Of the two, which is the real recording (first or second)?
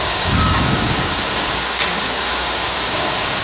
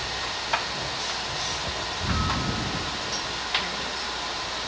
second